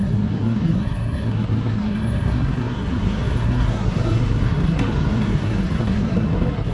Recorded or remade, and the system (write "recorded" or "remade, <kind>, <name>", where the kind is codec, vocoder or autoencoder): remade, codec, SNAC